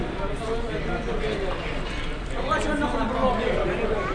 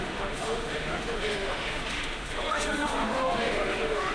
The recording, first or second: first